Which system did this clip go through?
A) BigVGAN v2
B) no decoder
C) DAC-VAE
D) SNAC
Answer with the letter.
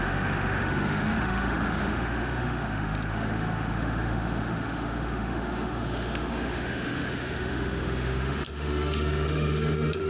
C